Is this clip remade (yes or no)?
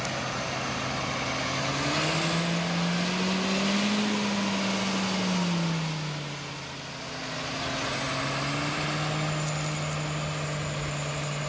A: no